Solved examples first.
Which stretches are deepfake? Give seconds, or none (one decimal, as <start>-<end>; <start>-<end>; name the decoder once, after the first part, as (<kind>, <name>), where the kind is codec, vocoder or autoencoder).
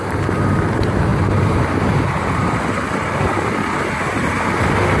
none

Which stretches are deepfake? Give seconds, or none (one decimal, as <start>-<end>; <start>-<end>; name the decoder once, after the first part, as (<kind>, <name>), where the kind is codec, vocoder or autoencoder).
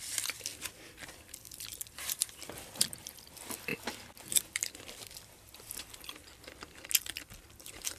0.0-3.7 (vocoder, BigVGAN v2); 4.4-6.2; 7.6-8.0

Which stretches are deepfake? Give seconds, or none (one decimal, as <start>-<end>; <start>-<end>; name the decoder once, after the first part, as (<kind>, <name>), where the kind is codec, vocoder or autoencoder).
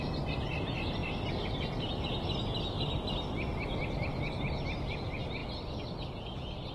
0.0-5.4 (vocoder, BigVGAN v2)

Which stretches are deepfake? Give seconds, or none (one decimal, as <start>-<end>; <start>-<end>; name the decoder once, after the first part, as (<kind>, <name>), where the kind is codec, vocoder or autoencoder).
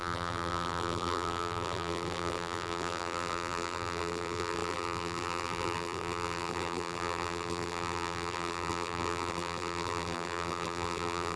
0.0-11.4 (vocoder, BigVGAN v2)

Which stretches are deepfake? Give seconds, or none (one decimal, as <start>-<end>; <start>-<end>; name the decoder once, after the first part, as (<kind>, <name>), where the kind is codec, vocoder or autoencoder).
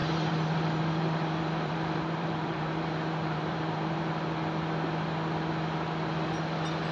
0.0-4.1 (vocoder, BigVGAN v2)